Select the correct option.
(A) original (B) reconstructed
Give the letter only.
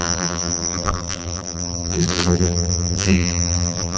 B